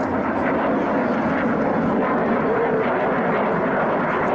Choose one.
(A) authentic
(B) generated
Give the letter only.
A